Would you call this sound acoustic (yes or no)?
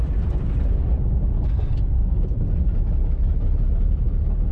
yes